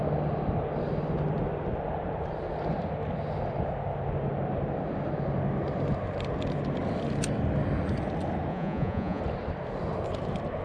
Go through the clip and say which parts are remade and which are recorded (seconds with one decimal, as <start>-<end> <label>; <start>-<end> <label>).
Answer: 0.0-8.5 recorded; 8.5-9.2 remade; 9.2-10.6 recorded